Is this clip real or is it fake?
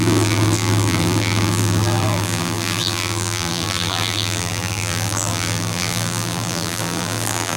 fake